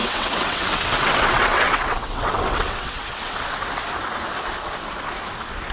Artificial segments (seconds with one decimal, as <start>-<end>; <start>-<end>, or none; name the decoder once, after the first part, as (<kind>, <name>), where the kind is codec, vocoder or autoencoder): 0.0-3.4 (vocoder, WaveNeXt)